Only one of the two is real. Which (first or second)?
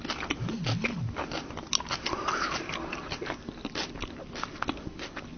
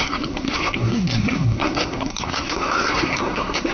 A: first